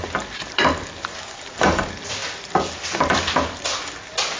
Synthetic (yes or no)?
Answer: no